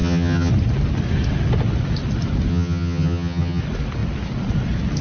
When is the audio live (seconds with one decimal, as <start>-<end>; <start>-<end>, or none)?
0.5-2.5; 3.6-5.0